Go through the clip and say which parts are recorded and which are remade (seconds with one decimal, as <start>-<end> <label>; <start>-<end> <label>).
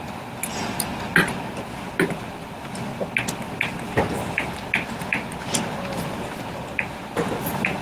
0.0-7.8 recorded